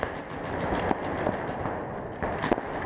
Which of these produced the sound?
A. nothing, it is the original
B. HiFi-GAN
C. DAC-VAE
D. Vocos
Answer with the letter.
A